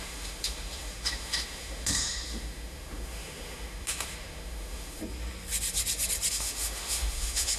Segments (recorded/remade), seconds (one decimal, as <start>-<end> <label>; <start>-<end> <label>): 0.0-5.0 remade; 5.0-6.3 recorded; 6.3-7.6 remade